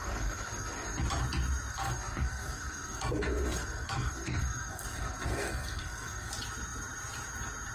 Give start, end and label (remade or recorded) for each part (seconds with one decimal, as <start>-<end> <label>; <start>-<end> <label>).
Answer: 0.0-1.0 remade; 1.0-1.7 recorded; 1.7-6.3 remade; 6.3-7.7 recorded